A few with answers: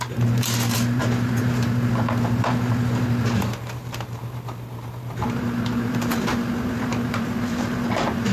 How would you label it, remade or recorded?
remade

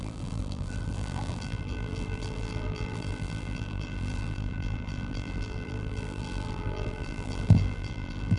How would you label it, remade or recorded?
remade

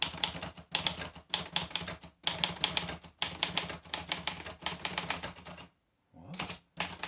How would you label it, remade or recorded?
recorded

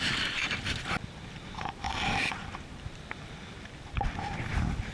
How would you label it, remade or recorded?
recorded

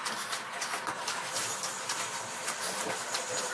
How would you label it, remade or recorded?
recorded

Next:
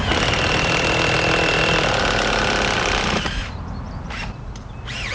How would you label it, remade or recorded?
recorded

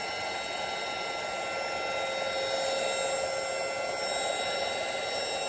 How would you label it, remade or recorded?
recorded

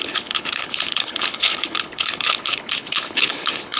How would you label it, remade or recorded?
remade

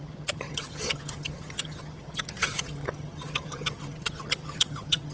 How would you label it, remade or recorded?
remade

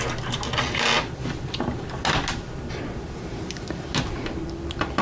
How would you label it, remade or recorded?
recorded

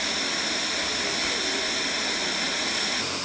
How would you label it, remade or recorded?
recorded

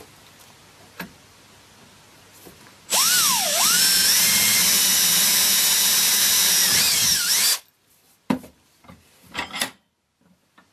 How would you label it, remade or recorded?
remade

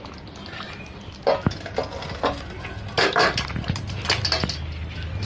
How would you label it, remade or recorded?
recorded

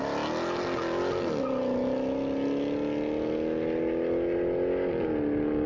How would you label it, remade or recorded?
recorded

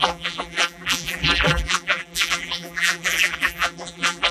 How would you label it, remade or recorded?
remade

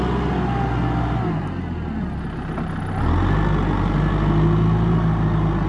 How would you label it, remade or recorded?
recorded